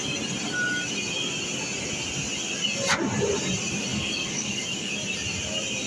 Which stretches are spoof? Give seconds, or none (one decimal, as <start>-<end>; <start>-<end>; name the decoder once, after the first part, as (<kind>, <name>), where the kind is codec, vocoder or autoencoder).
3.9-4.9 (codec, DAC)